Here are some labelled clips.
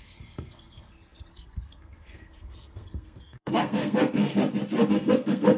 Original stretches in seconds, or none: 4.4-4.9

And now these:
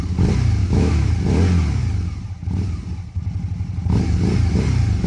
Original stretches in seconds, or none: 0.0-0.6; 1.1-5.1